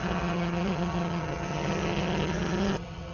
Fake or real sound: fake